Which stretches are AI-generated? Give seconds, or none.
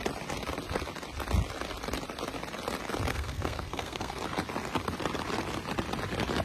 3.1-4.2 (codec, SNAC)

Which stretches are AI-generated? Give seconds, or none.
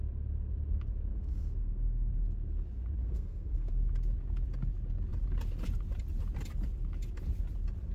1.1-2.1 (codec, SNAC); 3.0-3.7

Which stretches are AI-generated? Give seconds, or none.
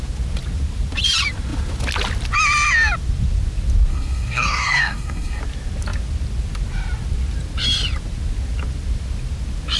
3.9-5.4 (codec, SNAC)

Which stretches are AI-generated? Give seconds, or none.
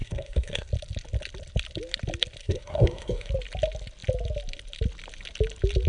0.0-0.7 (codec, SNAC); 2.4-3.3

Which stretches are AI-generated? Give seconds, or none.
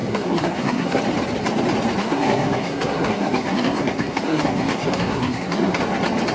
0.0-1.0 (codec, SNAC); 2.0-5.8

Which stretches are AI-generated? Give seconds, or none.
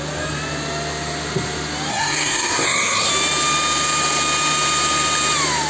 1.9-3.1 (codec, SNAC)